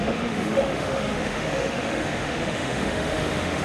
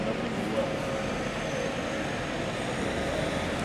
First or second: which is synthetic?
first